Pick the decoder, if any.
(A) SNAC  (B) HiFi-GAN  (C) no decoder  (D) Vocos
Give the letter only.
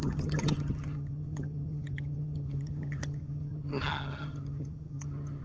B